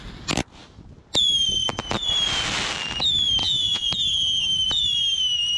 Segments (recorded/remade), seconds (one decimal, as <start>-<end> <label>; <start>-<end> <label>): 0.0-3.4 recorded; 3.4-3.9 remade; 3.9-5.6 recorded